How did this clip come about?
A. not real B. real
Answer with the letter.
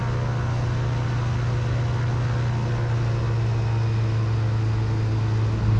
B